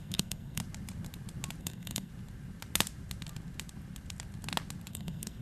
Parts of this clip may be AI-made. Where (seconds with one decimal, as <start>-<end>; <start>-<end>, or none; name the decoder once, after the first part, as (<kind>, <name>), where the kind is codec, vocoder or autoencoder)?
0.0-0.6 (codec, SNAC); 1.6-2.1; 4.9-5.4